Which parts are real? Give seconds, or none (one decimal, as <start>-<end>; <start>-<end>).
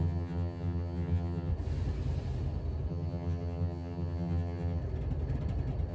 1.5-2.9; 4.8-5.9